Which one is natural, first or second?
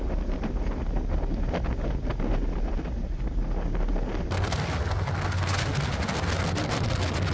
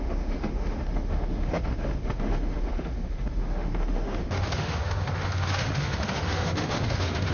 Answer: first